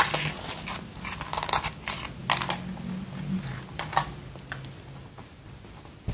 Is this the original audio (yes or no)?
yes